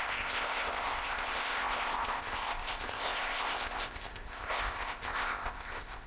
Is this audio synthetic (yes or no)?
yes